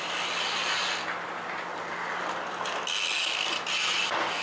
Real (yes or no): yes